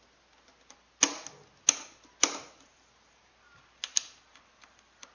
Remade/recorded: recorded